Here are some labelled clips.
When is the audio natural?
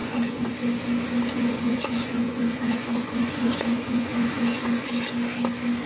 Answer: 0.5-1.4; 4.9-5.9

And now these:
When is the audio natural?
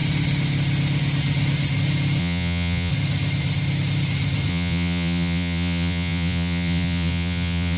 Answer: 0.0-2.2; 2.9-4.5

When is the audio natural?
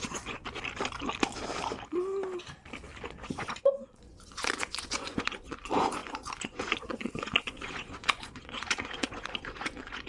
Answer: 0.4-3.2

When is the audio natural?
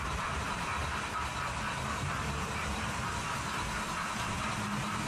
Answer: 0.0-5.1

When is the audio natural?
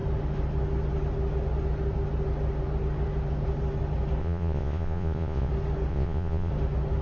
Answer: 0.0-4.2; 5.5-5.9; 6.5-7.0